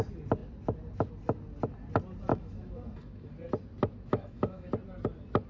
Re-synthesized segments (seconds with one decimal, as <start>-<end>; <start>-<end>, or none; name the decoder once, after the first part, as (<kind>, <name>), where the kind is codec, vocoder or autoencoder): 2.3-3.3 (autoencoder, DAC-VAE); 4.1-4.7